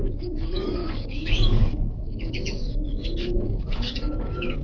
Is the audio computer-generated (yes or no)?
yes